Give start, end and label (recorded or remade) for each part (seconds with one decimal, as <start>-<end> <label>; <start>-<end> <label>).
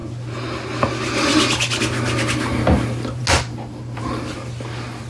0.0-5.1 recorded